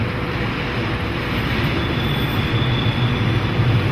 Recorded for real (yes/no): yes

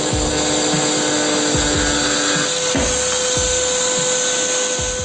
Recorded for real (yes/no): yes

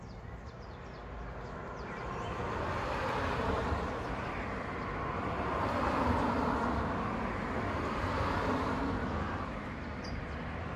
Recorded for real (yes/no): yes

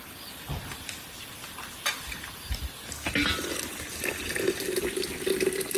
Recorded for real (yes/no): yes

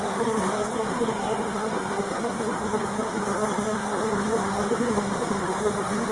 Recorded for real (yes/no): no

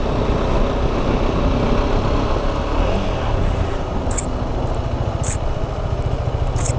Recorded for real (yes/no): yes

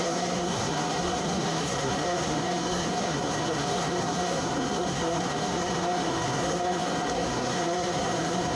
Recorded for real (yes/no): no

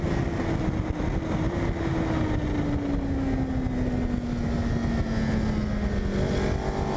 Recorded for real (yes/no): yes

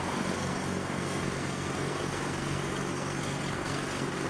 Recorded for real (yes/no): no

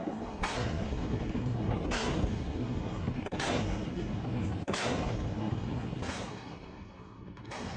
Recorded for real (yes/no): no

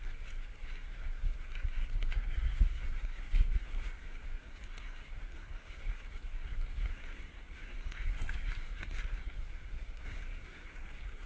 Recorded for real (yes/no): no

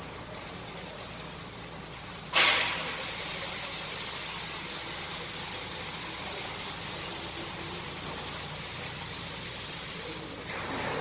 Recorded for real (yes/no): yes